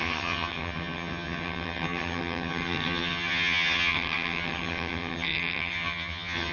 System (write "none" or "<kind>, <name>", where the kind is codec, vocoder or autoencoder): vocoder, HiFi-GAN